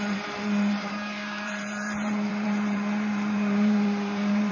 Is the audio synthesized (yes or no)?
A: yes